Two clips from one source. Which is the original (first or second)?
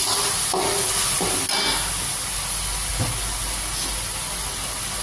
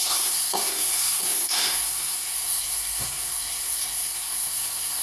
first